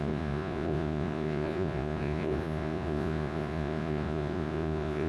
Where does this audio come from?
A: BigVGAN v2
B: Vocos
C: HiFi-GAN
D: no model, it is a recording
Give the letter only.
B